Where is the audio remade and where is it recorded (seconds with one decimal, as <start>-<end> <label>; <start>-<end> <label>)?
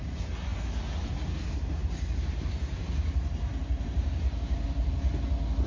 0.0-3.6 recorded; 3.6-5.1 remade; 5.1-5.7 recorded